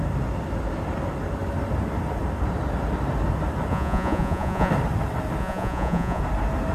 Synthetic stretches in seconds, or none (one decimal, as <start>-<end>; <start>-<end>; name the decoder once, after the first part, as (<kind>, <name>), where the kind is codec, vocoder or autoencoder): 3.7-4.7 (vocoder, Vocos); 5.4-6.2